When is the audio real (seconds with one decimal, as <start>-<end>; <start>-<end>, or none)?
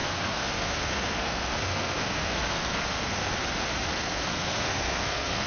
3.3-3.9